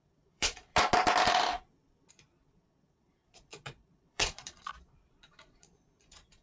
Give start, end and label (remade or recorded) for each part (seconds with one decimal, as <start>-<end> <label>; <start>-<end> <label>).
0.0-0.7 remade; 0.7-2.1 recorded; 2.1-6.4 remade